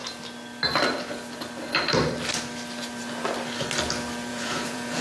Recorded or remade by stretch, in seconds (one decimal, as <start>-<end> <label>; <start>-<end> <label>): 0.0-4.3 recorded; 4.3-5.0 remade